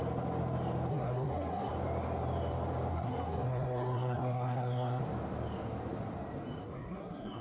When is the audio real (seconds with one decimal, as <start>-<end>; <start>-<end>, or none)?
0.0-0.9; 1.7-2.9; 5.0-6.6